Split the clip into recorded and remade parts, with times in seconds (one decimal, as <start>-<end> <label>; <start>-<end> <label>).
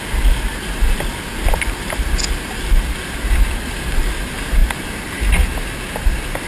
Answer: 0.0-6.5 recorded